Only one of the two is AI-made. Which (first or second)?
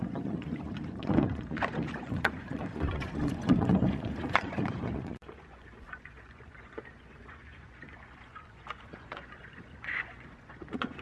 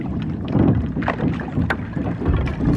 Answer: first